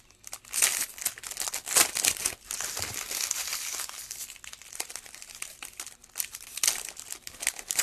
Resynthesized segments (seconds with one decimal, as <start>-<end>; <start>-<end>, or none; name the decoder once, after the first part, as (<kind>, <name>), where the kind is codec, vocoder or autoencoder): none